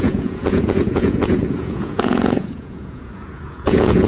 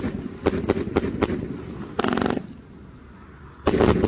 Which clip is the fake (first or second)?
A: first